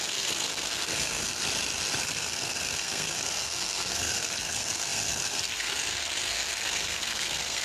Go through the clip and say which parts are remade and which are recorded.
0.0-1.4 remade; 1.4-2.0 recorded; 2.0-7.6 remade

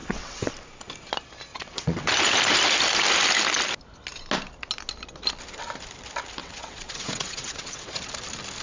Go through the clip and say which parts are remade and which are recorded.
0.0-0.5 remade; 0.5-1.5 recorded; 1.5-2.1 remade; 2.1-6.4 recorded; 6.4-8.0 remade; 8.0-8.6 recorded

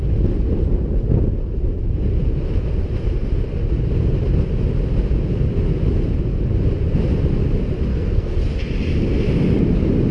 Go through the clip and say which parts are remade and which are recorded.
0.0-7.9 recorded; 7.9-8.4 remade; 8.4-10.1 recorded

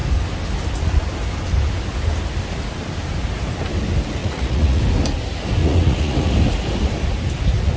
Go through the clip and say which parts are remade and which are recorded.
0.0-4.2 recorded; 4.2-4.8 remade; 4.8-5.6 recorded; 5.6-6.3 remade; 6.3-7.8 recorded

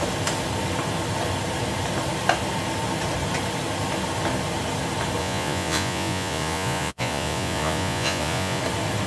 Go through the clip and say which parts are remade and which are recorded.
0.0-5.2 recorded; 5.2-8.6 remade; 8.6-9.1 recorded